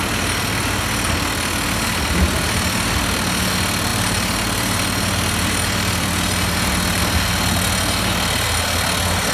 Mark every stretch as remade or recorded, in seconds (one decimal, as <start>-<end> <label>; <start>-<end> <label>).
0.0-3.9 recorded; 3.9-7.0 remade; 7.0-9.3 recorded